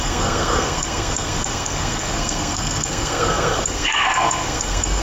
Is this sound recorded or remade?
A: remade